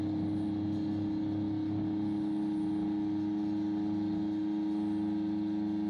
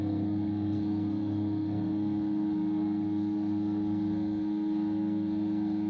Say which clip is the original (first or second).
first